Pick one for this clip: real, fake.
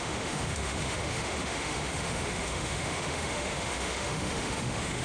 fake